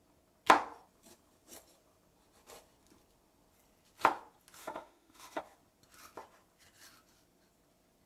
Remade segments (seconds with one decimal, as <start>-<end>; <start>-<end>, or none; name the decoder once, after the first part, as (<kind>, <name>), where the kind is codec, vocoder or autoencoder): 4.6-5.4 (autoencoder, DAC-VAE)